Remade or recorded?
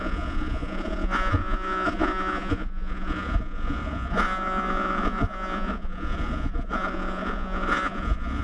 remade